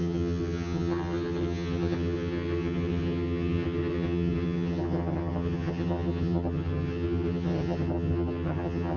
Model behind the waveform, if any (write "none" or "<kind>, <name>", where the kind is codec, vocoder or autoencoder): vocoder, HiFi-GAN